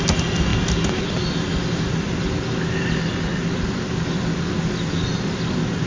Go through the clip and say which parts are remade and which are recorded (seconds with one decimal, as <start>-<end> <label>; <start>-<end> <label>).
0.0-5.9 recorded